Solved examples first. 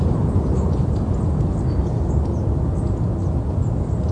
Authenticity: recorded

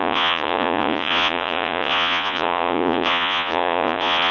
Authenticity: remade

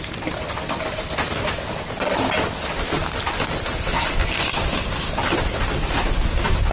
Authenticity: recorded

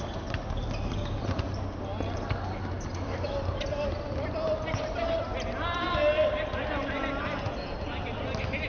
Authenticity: recorded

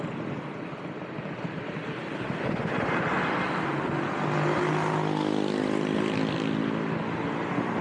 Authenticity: recorded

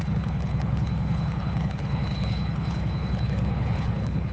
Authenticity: remade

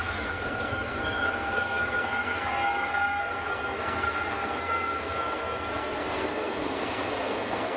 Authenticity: remade